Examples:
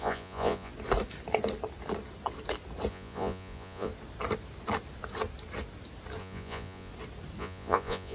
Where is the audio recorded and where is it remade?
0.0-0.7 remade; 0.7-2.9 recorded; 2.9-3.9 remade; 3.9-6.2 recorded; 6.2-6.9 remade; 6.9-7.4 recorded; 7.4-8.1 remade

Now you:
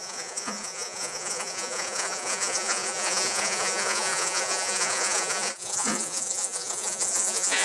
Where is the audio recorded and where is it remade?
0.0-7.6 remade

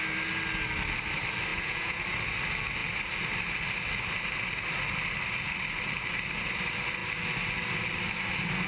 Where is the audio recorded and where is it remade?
0.0-1.5 recorded; 1.5-2.0 remade; 2.0-8.7 recorded

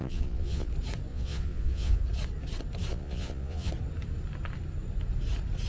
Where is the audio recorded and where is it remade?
0.0-0.7 remade; 0.7-1.1 recorded; 1.1-2.0 remade; 2.0-2.9 recorded; 2.9-3.7 remade; 3.7-5.7 recorded

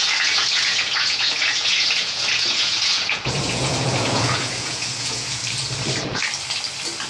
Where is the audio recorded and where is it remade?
0.0-5.4 remade; 5.4-7.1 recorded

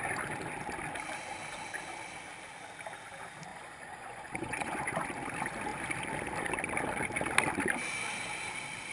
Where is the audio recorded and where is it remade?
0.0-3.5 recorded; 3.5-4.9 remade; 4.9-8.9 recorded

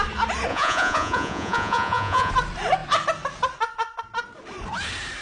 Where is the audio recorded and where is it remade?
0.0-0.5 recorded; 0.5-2.3 remade; 2.3-5.2 recorded